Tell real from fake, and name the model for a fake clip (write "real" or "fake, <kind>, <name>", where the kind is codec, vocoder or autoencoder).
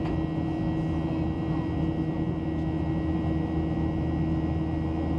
real